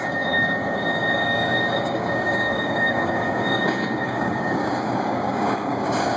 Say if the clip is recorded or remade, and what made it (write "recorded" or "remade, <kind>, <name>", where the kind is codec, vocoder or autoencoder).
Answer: remade, codec, DAC